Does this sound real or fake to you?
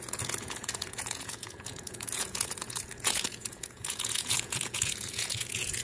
fake